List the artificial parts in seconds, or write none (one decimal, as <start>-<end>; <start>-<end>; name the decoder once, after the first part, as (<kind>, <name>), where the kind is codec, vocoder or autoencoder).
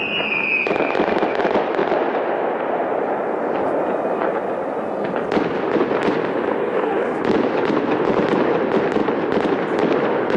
6.6-7.2 (codec, DAC)